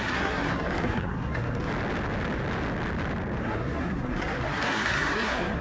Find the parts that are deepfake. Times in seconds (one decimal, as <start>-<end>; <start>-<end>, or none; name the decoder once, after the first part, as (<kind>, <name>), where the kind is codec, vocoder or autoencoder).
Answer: 0.0-1.7 (codec, SNAC); 3.4-5.6